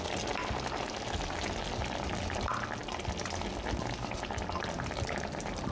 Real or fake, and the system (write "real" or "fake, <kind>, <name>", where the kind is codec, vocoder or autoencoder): real